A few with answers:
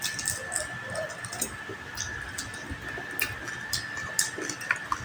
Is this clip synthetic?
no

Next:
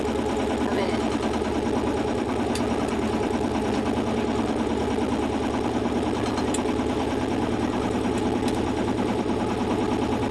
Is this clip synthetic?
no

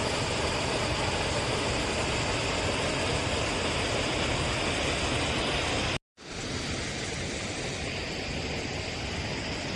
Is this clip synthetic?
no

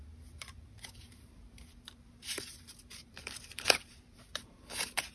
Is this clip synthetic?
yes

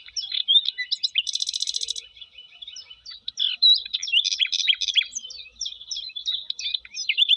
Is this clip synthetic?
yes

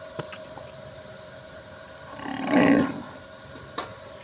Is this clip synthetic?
yes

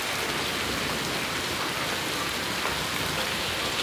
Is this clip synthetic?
no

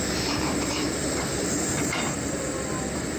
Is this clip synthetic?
yes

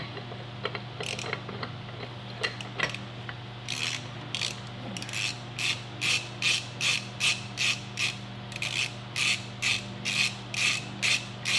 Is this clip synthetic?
no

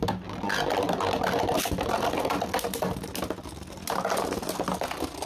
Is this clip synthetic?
no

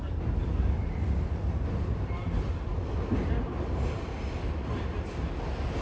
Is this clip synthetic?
no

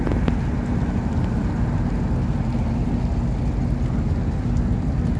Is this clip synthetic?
no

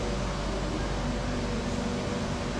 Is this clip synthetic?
no